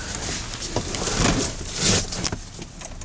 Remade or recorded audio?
recorded